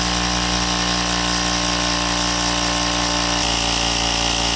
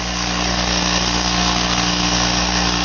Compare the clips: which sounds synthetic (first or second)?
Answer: second